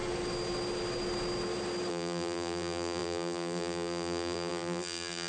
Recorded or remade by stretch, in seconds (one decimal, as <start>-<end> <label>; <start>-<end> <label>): 0.0-1.9 recorded; 1.9-5.3 remade